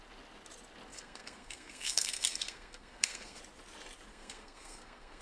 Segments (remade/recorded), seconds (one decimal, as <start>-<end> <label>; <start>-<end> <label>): 0.0-0.9 recorded; 0.9-3.4 remade; 3.4-4.1 recorded; 4.1-5.2 remade